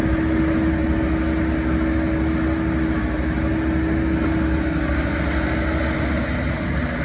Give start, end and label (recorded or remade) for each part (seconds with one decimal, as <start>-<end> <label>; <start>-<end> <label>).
0.0-7.0 recorded